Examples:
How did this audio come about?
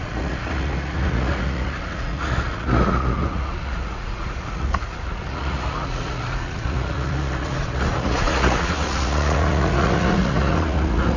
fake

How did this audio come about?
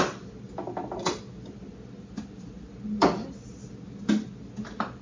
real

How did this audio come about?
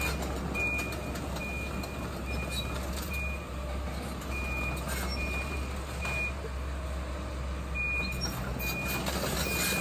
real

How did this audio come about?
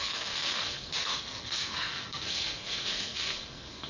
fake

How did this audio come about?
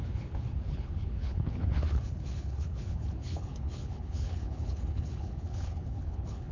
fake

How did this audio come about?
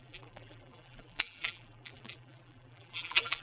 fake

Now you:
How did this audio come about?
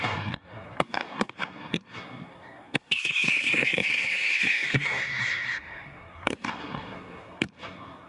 fake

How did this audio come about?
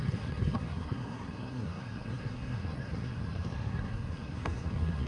fake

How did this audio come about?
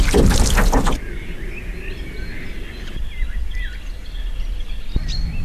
real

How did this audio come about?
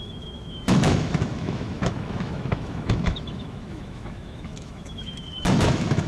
fake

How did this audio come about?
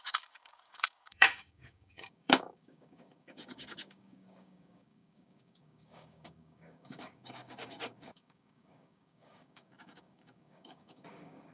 fake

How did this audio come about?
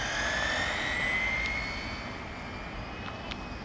real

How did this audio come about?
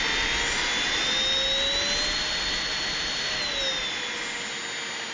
real